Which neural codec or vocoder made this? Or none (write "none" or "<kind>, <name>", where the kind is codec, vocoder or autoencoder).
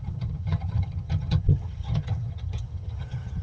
vocoder, HiFi-GAN